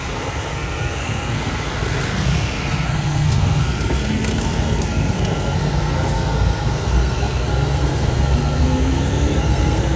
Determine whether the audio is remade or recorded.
remade